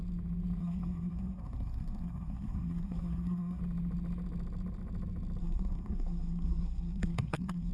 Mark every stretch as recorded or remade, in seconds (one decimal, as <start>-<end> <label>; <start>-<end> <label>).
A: 0.0-0.6 recorded; 0.6-3.6 remade; 3.6-5.4 recorded; 5.4-7.7 remade